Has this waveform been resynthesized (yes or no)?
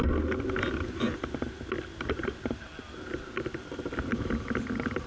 no